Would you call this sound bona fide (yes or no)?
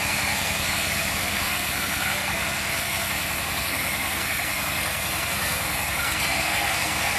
no